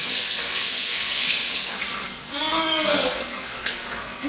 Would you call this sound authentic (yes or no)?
no